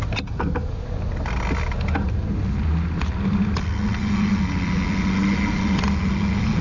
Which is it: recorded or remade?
recorded